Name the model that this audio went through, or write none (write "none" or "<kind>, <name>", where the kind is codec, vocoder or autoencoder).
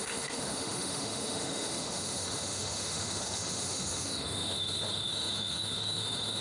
autoencoder, DAC-VAE